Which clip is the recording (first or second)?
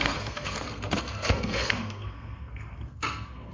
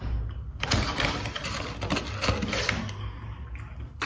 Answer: second